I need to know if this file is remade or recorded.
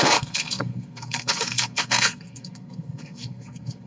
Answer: remade